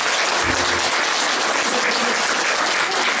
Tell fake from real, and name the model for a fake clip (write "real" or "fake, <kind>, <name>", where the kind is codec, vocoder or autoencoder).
real